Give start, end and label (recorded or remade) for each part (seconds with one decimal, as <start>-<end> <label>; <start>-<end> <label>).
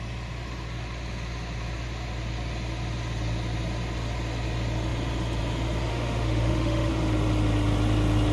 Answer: 0.0-5.9 recorded; 5.9-6.9 remade; 6.9-8.3 recorded